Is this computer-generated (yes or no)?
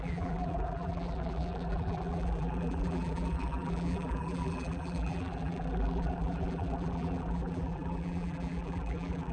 yes